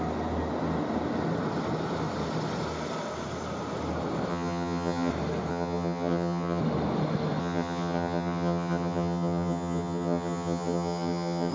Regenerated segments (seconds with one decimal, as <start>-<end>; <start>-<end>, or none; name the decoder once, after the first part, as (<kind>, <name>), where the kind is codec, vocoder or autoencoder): 4.3-5.1 (vocoder, HiFi-GAN); 5.5-6.6; 7.4-11.5